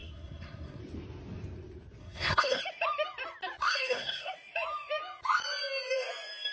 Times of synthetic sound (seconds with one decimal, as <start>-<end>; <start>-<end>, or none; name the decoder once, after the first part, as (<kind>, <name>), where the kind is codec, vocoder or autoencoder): 0.0-0.8 (codec, SNAC); 2.0-2.6; 3.6-4.3